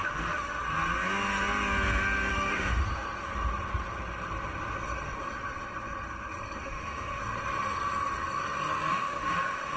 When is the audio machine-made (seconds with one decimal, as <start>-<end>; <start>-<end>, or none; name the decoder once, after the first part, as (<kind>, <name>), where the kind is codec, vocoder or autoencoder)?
0.0-0.6 (autoencoder, DAC-VAE); 2.3-2.8; 6.6-7.2; 8.9-9.8